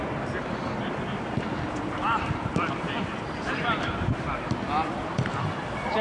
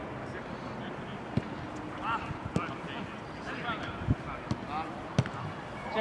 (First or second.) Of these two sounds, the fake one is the first